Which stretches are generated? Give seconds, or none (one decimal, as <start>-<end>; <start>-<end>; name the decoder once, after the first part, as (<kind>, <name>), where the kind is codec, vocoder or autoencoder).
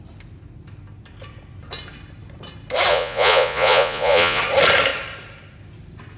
2.9-4.4 (vocoder, Vocos)